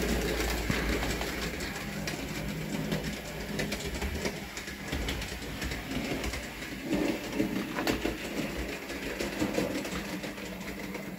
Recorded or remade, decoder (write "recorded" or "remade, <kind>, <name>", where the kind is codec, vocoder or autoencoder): recorded